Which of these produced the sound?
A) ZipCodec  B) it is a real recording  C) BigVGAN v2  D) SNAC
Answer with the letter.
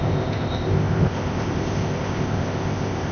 A